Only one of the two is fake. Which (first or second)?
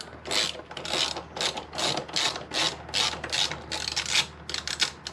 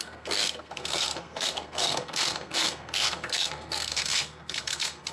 second